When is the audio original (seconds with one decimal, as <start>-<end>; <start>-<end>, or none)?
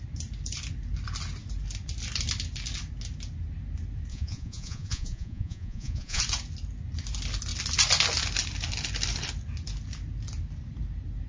0.0-4.1; 6.2-11.3